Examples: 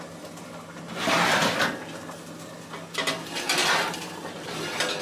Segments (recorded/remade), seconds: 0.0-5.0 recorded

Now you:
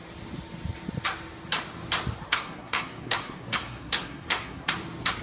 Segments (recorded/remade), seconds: 0.0-2.3 recorded; 2.3-4.7 remade; 4.7-5.2 recorded

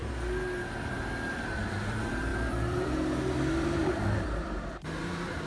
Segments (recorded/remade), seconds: 0.0-0.8 recorded; 0.8-5.5 remade

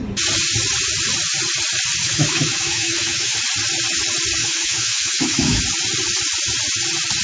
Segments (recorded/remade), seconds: 0.0-2.0 recorded; 2.0-3.4 remade; 3.4-4.4 recorded; 4.4-5.6 remade; 5.6-7.2 recorded

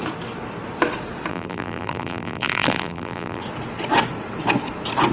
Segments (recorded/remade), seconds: 0.0-1.3 recorded; 1.3-3.4 remade; 3.4-5.1 recorded